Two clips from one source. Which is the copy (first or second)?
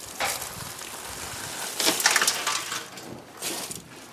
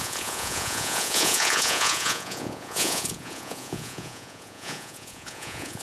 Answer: second